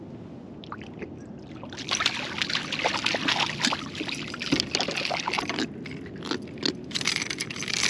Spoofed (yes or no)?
no